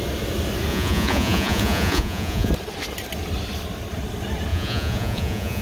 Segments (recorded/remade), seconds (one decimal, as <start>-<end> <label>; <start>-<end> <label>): 0.0-0.7 recorded; 0.7-2.5 remade; 2.5-4.5 recorded; 4.5-5.6 remade